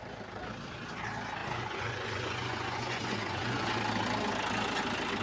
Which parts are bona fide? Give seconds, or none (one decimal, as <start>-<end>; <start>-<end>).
0.0-1.4; 3.8-5.2